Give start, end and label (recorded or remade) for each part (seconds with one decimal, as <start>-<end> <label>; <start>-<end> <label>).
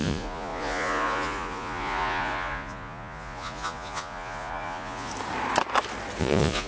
0.0-5.1 remade; 5.1-6.2 recorded; 6.2-6.7 remade